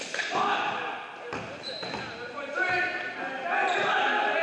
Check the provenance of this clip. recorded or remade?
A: remade